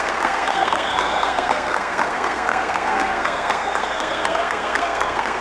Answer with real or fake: fake